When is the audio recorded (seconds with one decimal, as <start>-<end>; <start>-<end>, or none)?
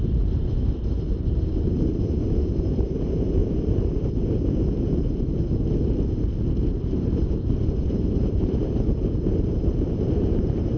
3.4-6.6